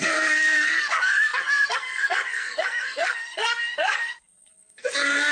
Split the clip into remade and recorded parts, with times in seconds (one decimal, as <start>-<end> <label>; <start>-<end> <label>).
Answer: 0.0-5.3 remade